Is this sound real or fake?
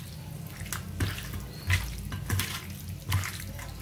real